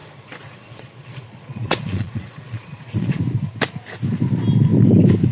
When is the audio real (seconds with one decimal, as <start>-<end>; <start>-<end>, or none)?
3.2-5.3